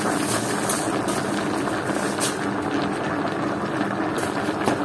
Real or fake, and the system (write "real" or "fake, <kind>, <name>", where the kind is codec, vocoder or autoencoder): real